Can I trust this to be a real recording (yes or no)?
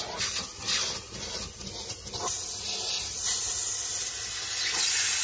yes